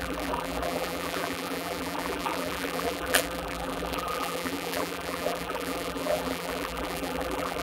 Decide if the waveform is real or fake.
fake